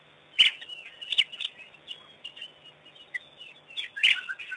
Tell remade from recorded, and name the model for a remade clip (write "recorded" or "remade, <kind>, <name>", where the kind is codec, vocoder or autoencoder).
recorded